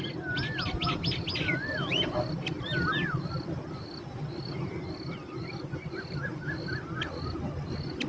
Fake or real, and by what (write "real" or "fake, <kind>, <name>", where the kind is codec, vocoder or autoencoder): real